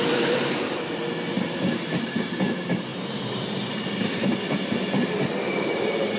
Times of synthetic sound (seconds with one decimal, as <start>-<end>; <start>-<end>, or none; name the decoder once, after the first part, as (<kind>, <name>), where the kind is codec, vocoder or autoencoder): 0.0-6.2 (vocoder, BigVGAN v2)